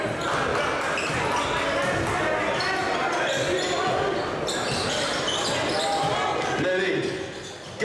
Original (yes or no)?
yes